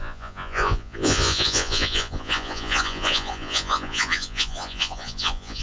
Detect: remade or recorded remade